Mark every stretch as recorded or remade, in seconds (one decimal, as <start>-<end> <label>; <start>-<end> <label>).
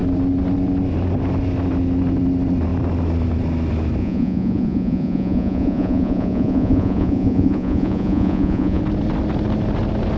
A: 0.0-4.0 recorded; 4.0-8.8 remade; 8.8-10.2 recorded